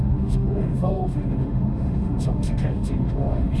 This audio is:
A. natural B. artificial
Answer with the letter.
B